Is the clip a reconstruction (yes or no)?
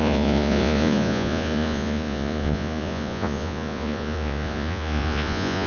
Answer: yes